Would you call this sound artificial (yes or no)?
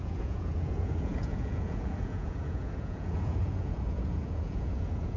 yes